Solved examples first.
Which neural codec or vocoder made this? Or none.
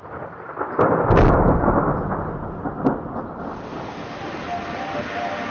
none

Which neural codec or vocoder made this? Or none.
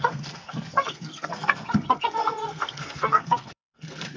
codec, SNAC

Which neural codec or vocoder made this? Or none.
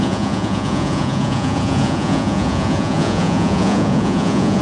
vocoder, Vocos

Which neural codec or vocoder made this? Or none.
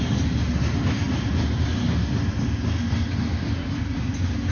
none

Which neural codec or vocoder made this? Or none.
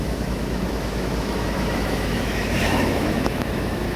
autoencoder, DAC-VAE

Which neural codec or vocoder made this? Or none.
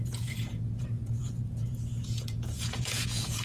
vocoder, Vocos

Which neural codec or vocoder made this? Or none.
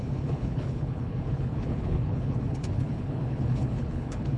codec, HILCodec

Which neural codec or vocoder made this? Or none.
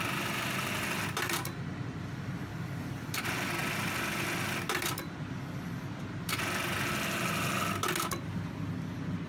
none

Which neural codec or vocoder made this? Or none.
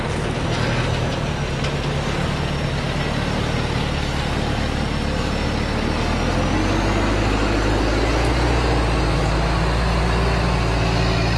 none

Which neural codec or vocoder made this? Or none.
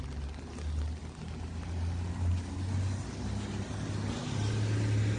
none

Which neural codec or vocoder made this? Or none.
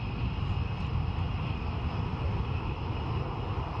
none